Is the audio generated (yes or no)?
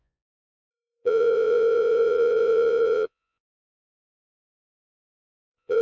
yes